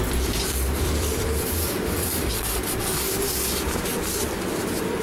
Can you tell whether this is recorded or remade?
remade